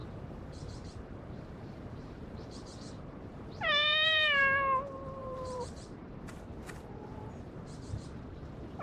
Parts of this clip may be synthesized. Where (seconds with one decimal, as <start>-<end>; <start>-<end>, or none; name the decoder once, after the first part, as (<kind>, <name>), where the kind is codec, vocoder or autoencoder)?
0.0-4.4 (vocoder, BigVGAN v2); 5.2-6.3